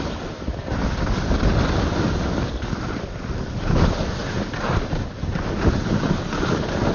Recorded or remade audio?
recorded